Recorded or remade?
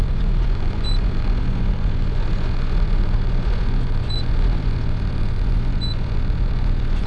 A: remade